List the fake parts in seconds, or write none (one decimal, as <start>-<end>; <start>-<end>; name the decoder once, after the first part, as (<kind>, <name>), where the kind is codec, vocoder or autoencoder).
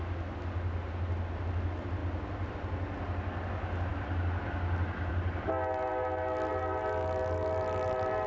none